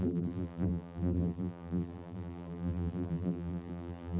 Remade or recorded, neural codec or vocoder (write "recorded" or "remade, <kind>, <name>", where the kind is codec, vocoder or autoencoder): remade, vocoder, BigVGAN v2